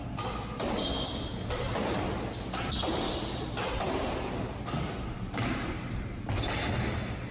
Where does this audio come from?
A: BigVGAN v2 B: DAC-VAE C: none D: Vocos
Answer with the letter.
C